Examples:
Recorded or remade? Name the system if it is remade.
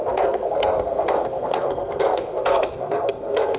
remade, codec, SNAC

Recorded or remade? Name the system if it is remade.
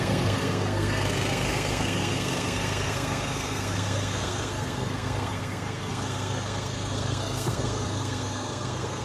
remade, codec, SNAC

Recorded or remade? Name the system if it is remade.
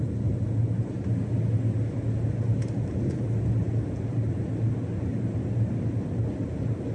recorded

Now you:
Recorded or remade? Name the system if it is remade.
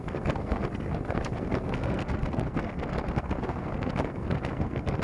remade, codec, SNAC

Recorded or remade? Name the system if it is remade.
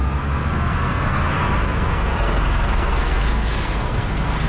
remade, codec, SNAC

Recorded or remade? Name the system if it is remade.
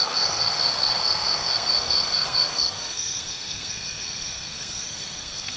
remade, codec, SNAC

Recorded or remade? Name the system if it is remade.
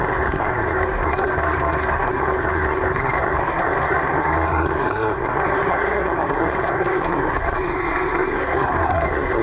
remade, codec, SNAC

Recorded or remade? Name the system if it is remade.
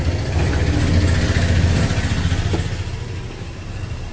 recorded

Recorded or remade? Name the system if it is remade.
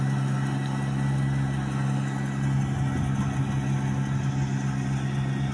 recorded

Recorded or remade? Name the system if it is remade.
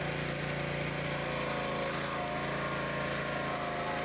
recorded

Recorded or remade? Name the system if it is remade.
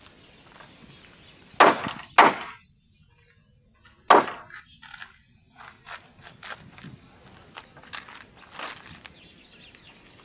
recorded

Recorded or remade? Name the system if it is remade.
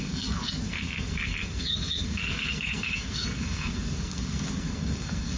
remade, codec, SNAC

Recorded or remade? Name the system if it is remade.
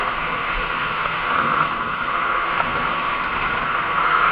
remade, codec, SNAC